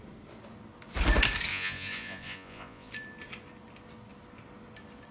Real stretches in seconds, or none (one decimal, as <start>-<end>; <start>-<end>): 0.0-1.5; 2.9-5.1